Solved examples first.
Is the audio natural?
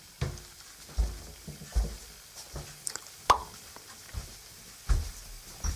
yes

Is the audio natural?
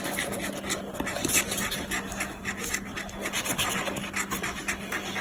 yes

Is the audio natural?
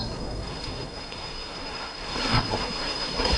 no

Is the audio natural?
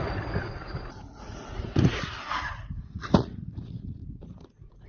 no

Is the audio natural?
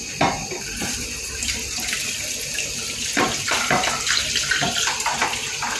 yes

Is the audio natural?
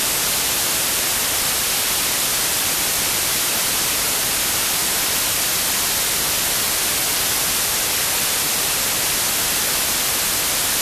yes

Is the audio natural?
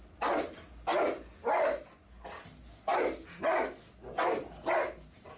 yes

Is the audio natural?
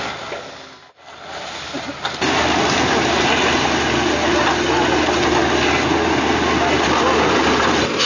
yes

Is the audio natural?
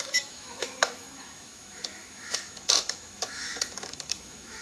no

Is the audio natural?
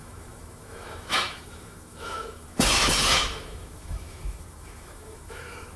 no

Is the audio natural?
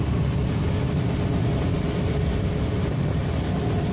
yes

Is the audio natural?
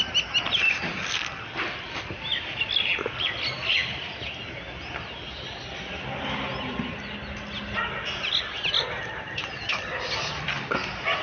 yes